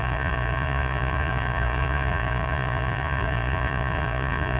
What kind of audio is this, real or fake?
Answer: fake